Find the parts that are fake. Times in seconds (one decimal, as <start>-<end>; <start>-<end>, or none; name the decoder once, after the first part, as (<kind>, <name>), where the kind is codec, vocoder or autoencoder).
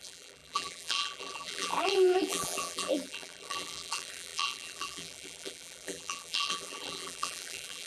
0.0-7.9 (vocoder, BigVGAN v2)